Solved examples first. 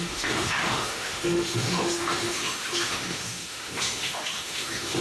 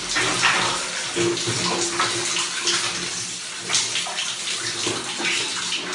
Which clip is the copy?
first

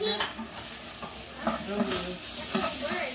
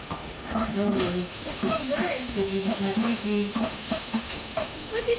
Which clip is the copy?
second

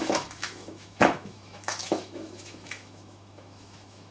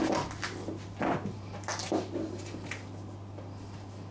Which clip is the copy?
first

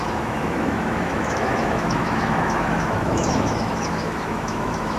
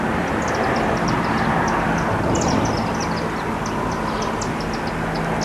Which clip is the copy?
first